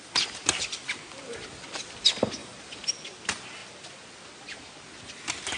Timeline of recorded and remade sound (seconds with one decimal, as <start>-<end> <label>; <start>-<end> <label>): 0.0-2.4 recorded; 2.4-2.9 remade; 2.9-5.6 recorded